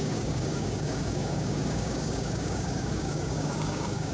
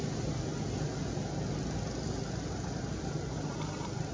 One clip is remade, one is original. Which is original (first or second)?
second